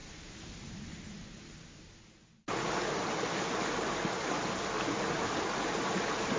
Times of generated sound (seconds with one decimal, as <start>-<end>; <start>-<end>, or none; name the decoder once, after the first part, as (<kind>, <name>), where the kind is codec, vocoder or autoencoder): none